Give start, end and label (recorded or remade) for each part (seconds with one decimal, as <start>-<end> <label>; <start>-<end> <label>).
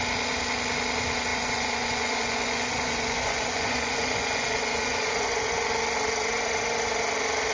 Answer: 0.0-1.3 recorded; 1.3-5.7 remade; 5.7-7.5 recorded